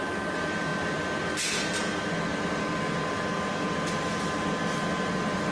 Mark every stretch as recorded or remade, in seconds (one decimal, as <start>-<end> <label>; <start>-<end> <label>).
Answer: 0.0-5.5 recorded